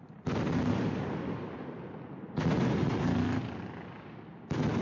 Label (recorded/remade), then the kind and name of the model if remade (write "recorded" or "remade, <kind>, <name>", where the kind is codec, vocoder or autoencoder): recorded